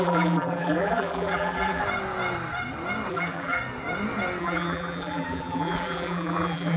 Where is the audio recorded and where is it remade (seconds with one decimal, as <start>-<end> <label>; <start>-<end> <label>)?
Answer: 0.0-1.8 remade; 1.8-3.1 recorded; 3.1-3.6 remade; 3.6-4.4 recorded; 4.4-6.8 remade

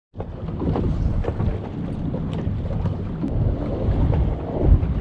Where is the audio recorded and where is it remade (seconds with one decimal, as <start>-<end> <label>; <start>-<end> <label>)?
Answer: 0.0-5.0 recorded